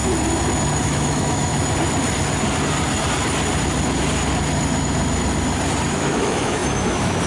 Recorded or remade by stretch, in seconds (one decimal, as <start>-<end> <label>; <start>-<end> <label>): 0.0-0.8 recorded; 0.8-1.5 remade; 1.5-5.9 recorded; 5.9-7.3 remade